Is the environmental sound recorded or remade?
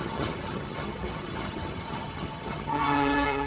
remade